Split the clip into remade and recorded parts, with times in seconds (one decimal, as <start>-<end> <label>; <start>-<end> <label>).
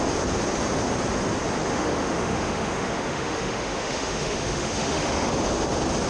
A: 0.0-1.7 recorded; 1.7-5.3 remade; 5.3-6.1 recorded